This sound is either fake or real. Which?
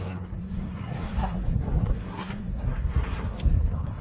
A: fake